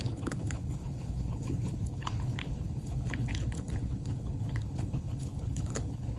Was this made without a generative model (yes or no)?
no